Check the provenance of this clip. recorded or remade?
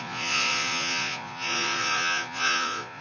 remade